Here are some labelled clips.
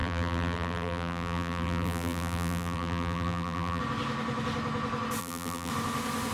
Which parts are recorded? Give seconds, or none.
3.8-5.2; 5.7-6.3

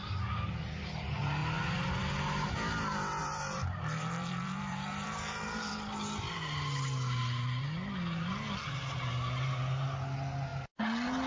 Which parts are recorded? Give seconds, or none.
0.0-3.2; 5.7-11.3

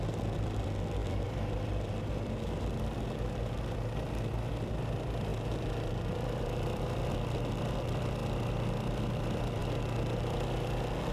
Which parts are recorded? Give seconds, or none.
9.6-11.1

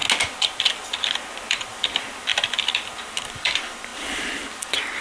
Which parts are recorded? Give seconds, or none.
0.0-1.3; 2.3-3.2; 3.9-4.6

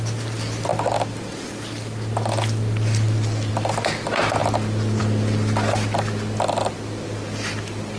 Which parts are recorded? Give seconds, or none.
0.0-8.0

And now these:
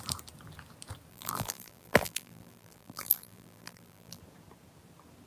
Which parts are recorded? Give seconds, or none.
0.0-1.1; 4.2-5.3

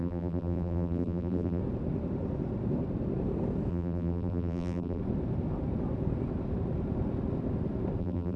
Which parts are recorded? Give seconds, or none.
1.6-3.7; 5.0-8.0